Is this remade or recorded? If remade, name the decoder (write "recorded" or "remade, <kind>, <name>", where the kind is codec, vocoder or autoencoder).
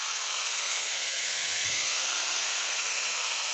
remade, codec, SNAC